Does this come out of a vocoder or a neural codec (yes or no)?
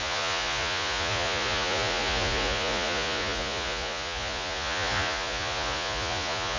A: yes